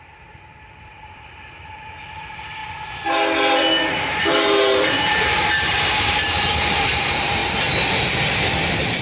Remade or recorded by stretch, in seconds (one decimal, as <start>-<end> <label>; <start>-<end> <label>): 0.0-2.6 remade; 2.6-4.2 recorded; 4.2-7.4 remade; 7.4-8.3 recorded; 8.3-9.0 remade